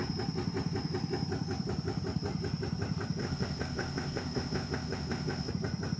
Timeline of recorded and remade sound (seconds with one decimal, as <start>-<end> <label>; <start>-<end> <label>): 0.0-3.2 recorded; 3.2-5.5 remade; 5.5-6.0 recorded

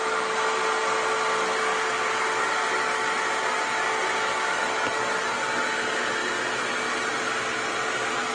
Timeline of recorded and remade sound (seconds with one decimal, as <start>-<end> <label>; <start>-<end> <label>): 0.0-8.3 recorded